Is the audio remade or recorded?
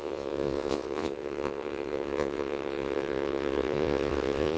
remade